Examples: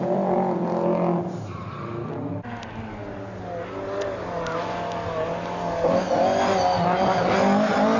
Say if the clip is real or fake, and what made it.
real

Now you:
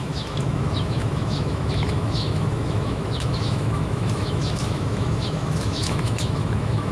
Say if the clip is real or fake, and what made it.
fake, autoencoder, DAC-VAE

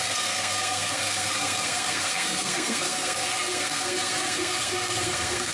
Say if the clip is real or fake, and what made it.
fake, codec, SNAC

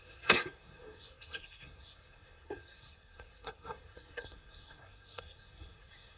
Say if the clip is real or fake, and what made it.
fake, codec, SNAC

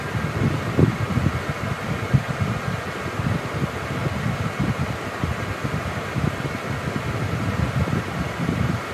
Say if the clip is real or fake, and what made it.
fake, vocoder, BigVGAN v2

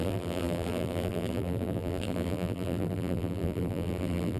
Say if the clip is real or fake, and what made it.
fake, vocoder, BigVGAN v2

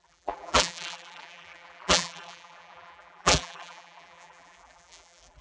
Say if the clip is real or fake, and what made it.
fake, vocoder, BigVGAN v2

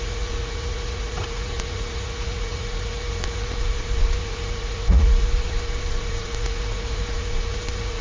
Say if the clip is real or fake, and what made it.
fake, vocoder, Vocos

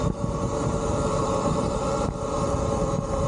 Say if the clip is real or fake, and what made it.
fake, vocoder, BigVGAN v2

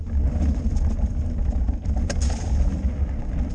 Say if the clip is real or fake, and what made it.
real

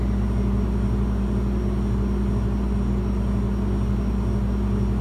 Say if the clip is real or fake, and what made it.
real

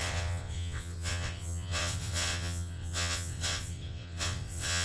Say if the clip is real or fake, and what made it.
fake, vocoder, WaveNeXt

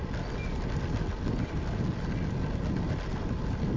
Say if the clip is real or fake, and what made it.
real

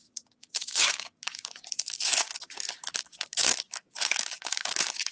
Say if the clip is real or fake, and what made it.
fake, codec, DAC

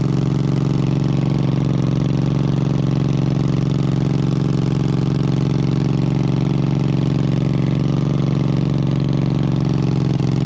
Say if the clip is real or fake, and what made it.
real